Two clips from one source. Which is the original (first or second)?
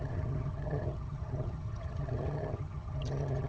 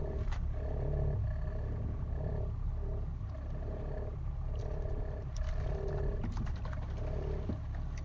second